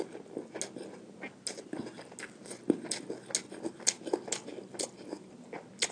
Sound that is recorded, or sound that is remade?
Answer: recorded